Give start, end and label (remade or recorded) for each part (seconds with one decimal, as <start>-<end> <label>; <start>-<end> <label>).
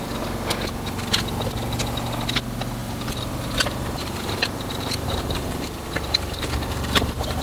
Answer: 0.0-2.8 recorded; 2.8-7.4 remade